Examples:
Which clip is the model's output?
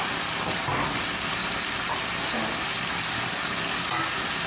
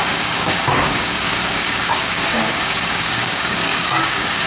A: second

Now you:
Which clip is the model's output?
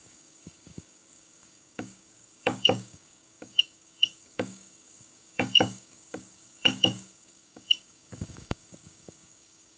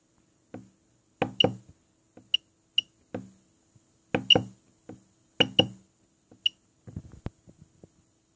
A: first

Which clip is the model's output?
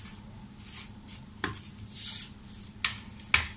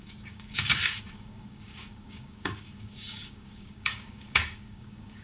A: second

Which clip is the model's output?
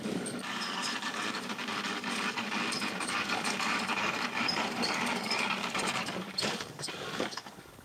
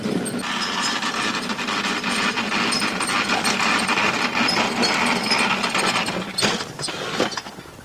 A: first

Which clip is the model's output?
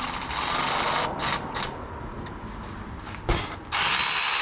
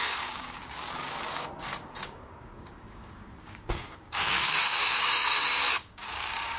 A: second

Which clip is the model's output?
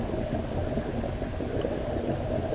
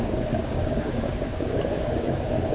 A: second